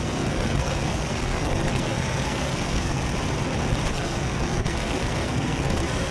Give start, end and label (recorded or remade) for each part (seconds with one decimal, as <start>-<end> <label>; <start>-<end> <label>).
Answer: 0.0-3.0 remade; 3.0-3.9 recorded; 3.9-6.1 remade